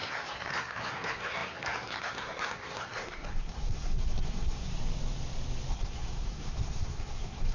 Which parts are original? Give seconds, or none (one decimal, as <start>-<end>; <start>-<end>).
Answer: 4.7-5.7